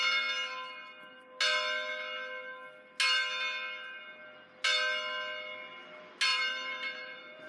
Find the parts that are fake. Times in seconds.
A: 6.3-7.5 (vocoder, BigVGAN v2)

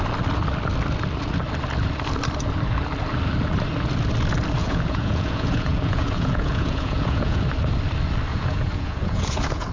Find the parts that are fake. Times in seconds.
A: 4.6-7.4 (vocoder, Vocos); 8.3-9.7